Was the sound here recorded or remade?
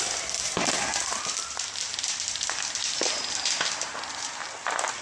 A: recorded